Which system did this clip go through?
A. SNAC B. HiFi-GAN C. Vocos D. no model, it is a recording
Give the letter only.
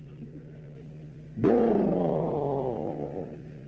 C